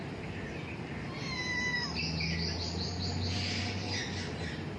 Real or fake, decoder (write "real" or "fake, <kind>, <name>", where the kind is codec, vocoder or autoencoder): real